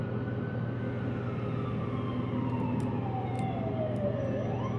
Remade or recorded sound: recorded